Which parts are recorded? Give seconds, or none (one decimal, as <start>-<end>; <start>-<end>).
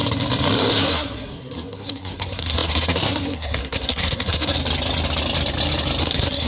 0.0-0.8; 4.6-6.0